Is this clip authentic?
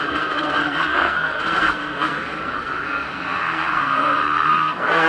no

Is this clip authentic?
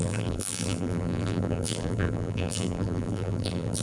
no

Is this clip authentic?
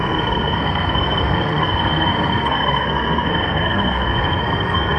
no